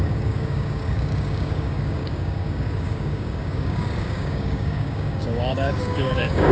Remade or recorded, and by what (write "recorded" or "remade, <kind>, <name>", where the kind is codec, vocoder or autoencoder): remade, codec, DAC